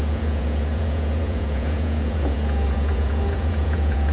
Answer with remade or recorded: remade